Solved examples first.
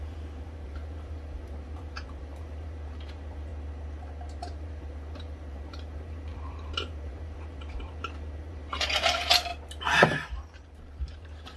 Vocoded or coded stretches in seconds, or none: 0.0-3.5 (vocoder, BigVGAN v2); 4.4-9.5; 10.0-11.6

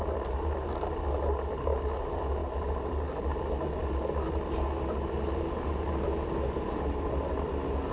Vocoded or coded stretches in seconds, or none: none